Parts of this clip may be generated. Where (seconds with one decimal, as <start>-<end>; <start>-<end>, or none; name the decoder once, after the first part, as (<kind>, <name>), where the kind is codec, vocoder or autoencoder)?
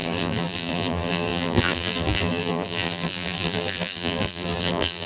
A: 0.0-5.1 (vocoder, BigVGAN v2)